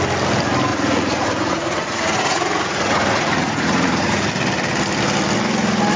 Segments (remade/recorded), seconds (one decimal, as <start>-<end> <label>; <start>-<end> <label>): 0.0-0.7 recorded; 0.7-4.3 remade; 4.3-6.0 recorded